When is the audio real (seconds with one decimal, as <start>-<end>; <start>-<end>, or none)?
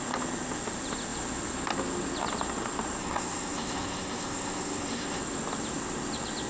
0.0-3.0; 5.2-6.5